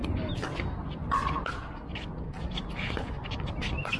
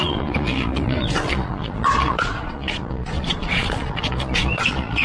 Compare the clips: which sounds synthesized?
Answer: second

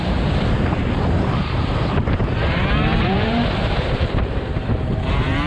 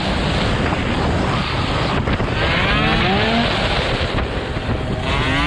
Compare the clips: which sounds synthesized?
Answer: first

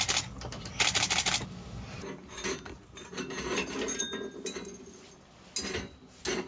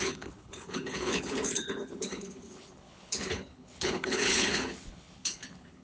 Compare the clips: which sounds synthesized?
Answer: second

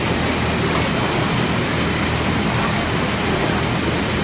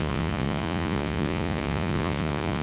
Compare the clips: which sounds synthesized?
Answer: second